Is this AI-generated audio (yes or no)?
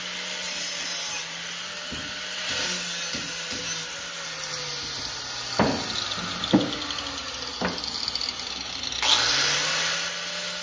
no